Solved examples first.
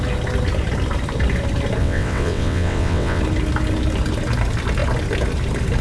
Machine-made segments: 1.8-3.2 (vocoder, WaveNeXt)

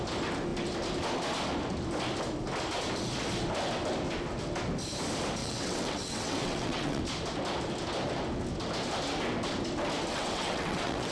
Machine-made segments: 5.4-7.0 (vocoder, WaveNeXt); 10.1-11.1

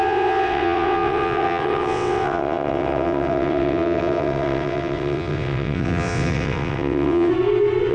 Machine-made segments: 0.0-7.3 (vocoder, WaveNeXt)